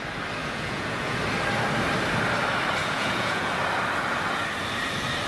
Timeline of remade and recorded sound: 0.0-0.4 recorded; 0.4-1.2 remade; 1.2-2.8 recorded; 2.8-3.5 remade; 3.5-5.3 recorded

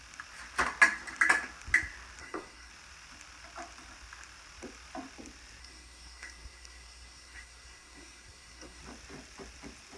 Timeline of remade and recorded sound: 0.0-2.2 recorded; 2.2-2.7 remade; 2.7-5.6 recorded; 5.6-8.8 remade; 8.8-10.0 recorded

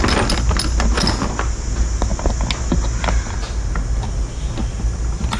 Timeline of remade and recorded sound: 0.0-5.4 recorded